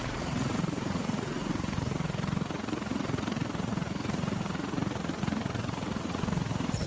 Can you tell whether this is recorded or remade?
remade